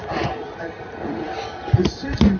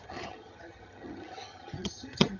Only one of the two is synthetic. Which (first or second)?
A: second